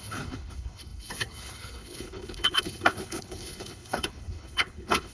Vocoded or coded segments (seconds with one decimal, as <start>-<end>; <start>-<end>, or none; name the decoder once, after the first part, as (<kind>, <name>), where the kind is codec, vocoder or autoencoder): 0.0-5.1 (codec, HILCodec)